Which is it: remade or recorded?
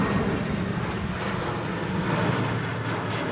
recorded